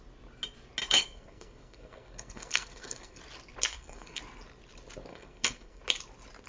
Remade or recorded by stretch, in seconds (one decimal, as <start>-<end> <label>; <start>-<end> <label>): 0.0-0.8 recorded; 0.8-3.2 remade; 3.2-3.7 recorded; 3.7-4.2 remade; 4.2-5.1 recorded; 5.1-5.8 remade; 5.8-6.5 recorded